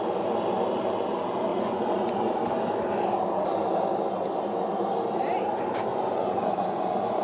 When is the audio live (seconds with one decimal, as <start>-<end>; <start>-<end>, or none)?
0.0-1.5; 2.3-5.9